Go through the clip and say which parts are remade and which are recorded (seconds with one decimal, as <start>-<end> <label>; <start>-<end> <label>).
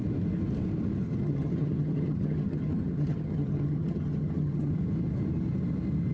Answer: 0.0-1.0 recorded; 1.0-4.7 remade; 4.7-6.1 recorded